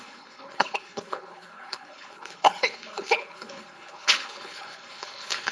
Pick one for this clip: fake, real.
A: fake